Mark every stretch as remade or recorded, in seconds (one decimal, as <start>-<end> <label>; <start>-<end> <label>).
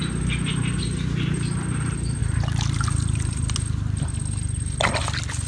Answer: 0.0-5.5 recorded